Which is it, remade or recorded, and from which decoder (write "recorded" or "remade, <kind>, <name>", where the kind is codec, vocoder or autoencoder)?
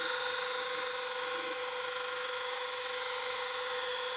remade, autoencoder, DAC-VAE